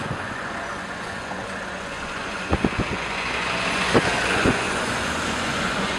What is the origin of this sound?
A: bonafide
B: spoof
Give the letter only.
B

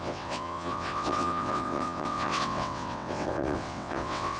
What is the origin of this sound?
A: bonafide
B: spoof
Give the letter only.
B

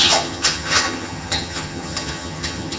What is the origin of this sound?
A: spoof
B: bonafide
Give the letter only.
A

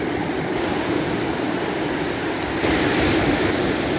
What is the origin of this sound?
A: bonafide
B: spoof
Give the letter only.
A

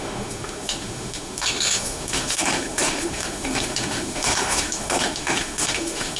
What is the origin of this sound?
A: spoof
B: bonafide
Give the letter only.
A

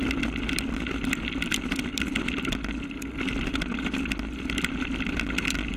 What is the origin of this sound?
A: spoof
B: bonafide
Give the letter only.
B